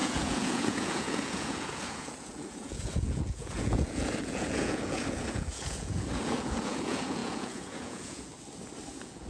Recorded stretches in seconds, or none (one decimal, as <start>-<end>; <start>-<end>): 8.3-8.9